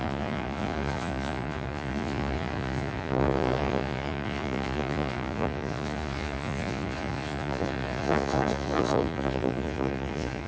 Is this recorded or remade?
remade